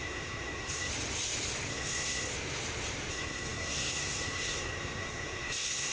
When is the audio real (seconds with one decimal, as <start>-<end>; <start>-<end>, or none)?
0.9-1.7; 2.3-3.1